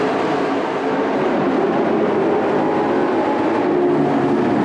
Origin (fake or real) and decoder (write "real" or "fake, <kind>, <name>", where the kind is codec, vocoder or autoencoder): real